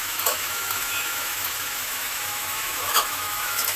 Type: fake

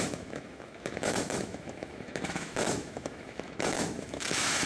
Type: fake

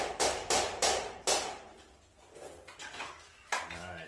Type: real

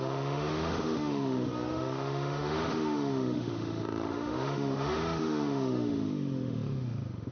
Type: fake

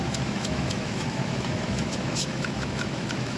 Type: fake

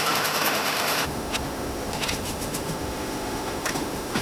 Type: fake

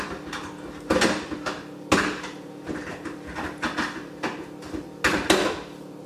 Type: real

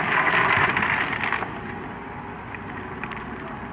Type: real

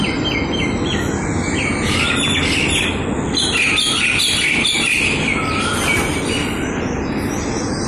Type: real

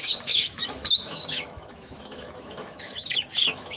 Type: fake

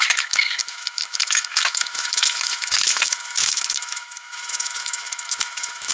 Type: fake